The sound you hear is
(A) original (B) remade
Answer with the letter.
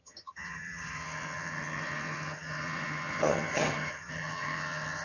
B